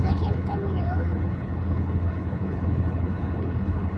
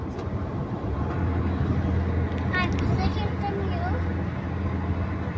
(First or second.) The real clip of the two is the second